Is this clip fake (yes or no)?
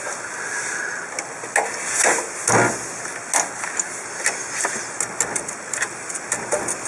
no